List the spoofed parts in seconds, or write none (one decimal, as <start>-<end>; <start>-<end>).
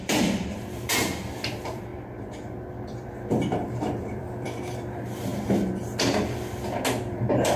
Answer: 0.0-1.9; 2.7-5.3; 7.0-7.6